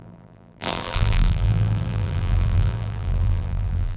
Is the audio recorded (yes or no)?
no